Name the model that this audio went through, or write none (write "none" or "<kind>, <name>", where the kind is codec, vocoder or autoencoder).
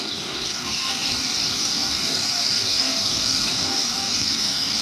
codec, DAC